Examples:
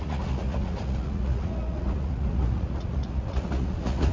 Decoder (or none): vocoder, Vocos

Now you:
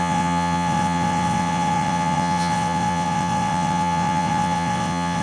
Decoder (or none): vocoder, WaveNeXt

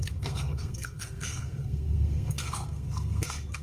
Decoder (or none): codec, SNAC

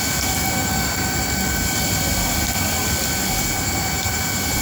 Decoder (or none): none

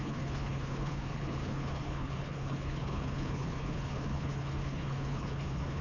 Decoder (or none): codec, HILCodec